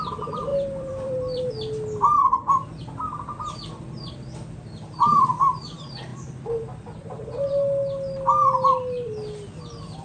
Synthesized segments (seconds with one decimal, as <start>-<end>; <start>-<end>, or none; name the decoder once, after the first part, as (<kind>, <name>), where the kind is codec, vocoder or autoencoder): 0.5-1.4 (vocoder, BigVGAN v2); 6.1-6.6